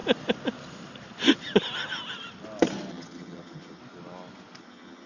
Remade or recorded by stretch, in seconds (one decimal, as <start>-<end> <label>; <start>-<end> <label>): 0.0-2.9 recorded; 2.9-3.8 remade; 3.8-4.6 recorded; 4.6-5.1 remade